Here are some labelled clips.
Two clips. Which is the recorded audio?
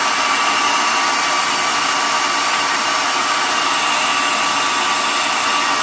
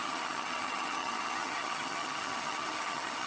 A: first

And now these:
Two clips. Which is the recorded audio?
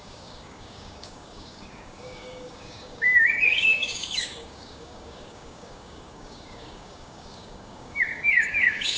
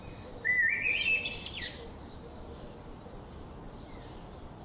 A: second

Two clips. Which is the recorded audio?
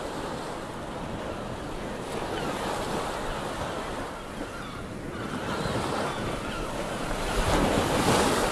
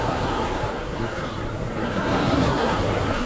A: first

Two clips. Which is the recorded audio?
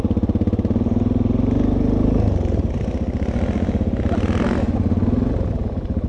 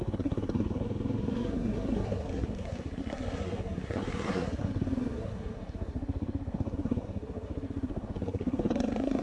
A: first